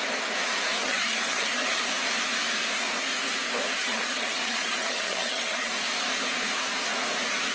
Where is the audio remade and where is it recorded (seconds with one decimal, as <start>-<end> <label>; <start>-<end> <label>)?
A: 0.0-0.8 recorded; 0.8-1.9 remade; 1.9-3.8 recorded; 3.8-5.7 remade; 5.7-7.5 recorded